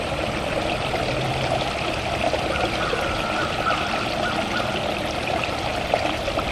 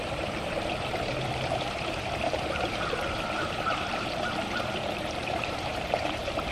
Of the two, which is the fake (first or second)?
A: second